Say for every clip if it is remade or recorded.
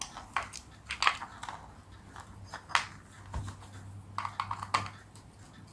recorded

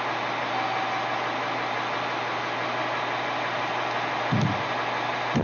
recorded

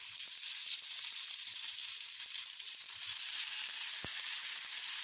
remade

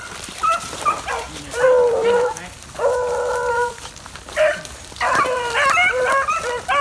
remade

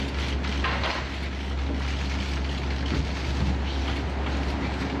recorded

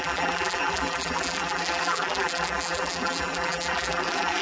remade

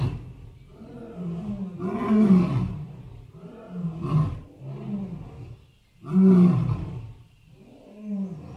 recorded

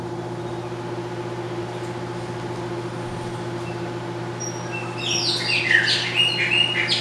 recorded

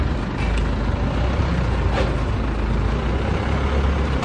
recorded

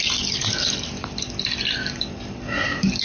remade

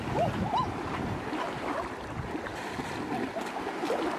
recorded